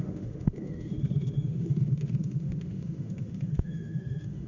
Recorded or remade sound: remade